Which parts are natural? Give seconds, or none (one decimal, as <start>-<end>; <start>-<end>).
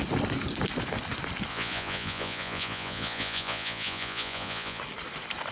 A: 0.0-1.5; 4.8-5.5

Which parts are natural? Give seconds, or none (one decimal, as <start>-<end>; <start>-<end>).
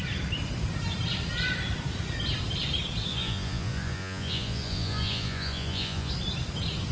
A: 0.0-3.1; 6.1-6.9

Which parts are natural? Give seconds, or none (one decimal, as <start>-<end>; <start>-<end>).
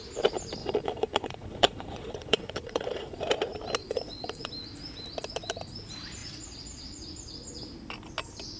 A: 0.0-0.6; 3.2-3.8; 4.5-6.2; 7.0-8.6